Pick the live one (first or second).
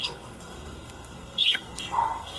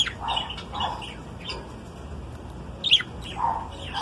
second